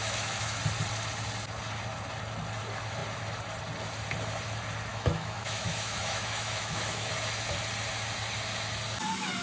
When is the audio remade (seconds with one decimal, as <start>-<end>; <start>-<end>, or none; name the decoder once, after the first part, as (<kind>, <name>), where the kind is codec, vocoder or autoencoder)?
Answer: 0.0-0.6 (autoencoder, DAC-VAE); 4.9-7.1